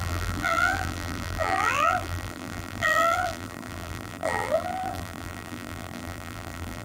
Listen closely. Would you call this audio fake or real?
fake